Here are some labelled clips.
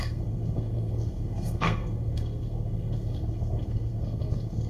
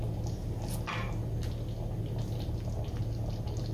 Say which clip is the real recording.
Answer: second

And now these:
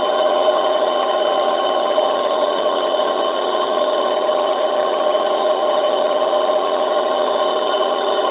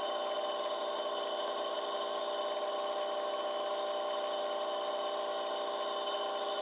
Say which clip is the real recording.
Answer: second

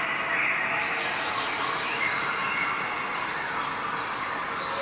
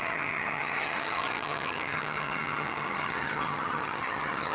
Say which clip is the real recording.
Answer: first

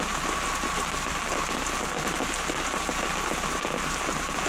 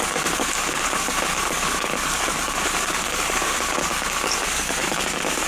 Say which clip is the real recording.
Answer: first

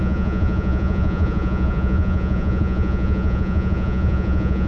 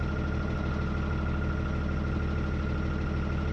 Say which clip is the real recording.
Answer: second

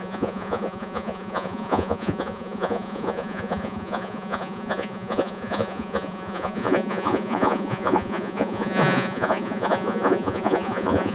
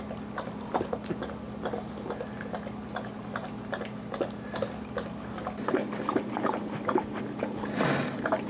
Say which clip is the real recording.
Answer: second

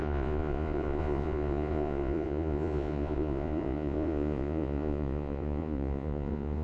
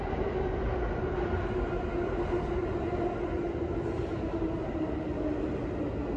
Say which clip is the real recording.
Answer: second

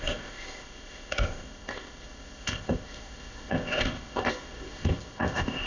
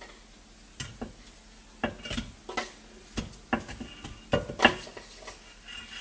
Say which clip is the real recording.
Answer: second